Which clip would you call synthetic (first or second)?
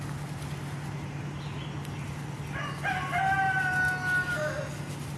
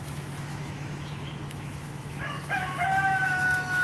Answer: second